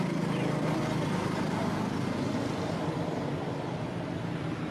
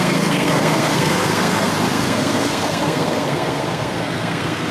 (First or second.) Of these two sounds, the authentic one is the first